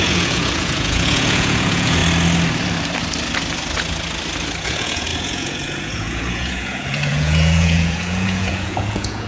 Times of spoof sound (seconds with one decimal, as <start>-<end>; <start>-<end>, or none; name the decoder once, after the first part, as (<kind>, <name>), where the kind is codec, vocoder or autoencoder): 0.0-2.0 (vocoder, Vocos); 4.6-9.3